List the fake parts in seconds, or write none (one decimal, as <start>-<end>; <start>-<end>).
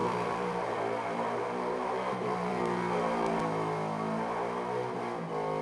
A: 0.0-3.4